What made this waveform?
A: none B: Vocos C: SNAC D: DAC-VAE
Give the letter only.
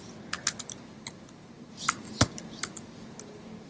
A